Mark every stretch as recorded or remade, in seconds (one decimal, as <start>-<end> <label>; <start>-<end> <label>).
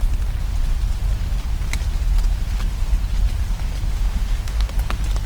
0.0-3.9 recorded; 3.9-4.7 remade; 4.7-5.3 recorded